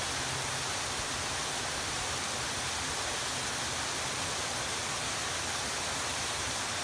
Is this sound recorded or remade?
recorded